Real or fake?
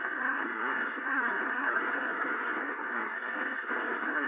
fake